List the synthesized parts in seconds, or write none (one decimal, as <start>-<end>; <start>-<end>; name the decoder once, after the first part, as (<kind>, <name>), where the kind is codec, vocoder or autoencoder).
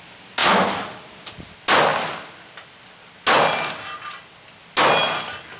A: none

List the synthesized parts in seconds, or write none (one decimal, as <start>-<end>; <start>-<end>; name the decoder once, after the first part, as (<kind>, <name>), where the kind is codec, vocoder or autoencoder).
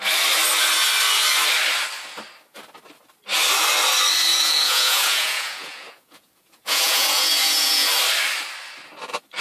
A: 4.3-7.9 (vocoder, Vocos)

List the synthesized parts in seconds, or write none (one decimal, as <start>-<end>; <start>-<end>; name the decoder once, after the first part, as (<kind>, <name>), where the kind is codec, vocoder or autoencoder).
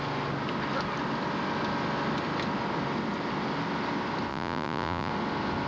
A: 4.3-5.1 (vocoder, Vocos)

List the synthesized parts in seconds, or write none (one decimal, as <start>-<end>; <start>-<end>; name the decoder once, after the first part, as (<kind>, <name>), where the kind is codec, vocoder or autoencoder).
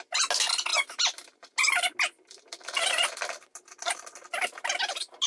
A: none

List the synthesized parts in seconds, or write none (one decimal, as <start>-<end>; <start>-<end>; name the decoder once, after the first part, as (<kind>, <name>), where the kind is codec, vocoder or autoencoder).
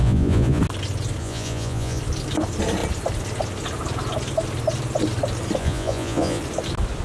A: 0.0-0.6 (vocoder, Vocos); 1.2-2.0; 5.6-6.4